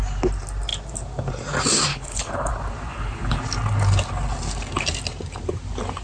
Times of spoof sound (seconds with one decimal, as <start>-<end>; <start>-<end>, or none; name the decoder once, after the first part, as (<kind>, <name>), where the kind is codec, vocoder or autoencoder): 1.9-2.5 (codec, HILCodec); 2.9-3.4